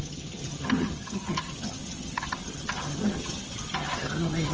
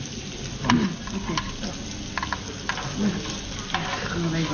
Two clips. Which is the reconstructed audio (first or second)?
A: first